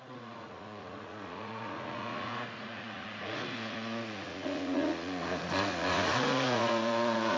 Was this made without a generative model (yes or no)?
no